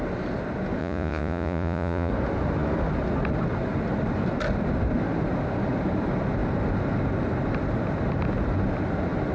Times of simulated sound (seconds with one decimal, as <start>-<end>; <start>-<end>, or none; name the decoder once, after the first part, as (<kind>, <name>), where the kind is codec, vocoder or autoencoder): 0.8-2.1 (vocoder, Vocos)